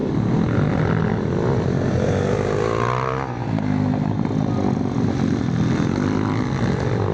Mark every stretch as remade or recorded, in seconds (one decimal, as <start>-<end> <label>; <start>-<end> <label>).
0.0-7.1 recorded